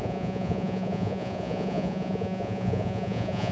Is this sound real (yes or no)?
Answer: no